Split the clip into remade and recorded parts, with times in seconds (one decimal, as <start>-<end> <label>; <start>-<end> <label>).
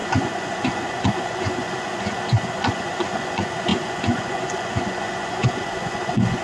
0.0-6.4 remade